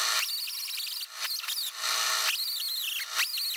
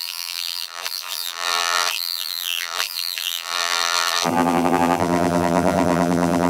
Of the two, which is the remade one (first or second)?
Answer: second